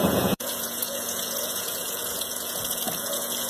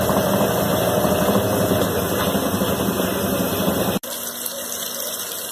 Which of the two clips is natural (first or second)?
second